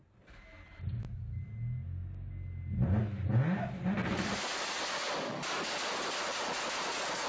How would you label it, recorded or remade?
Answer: recorded